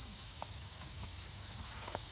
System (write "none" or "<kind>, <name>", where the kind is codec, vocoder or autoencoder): codec, DAC